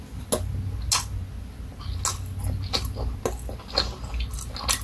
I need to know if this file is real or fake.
real